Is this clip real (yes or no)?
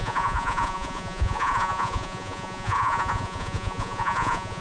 no